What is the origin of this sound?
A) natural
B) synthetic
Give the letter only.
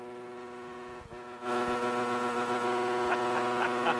A